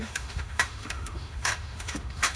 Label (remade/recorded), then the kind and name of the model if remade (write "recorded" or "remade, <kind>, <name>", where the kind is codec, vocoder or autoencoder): remade, autoencoder, DAC-VAE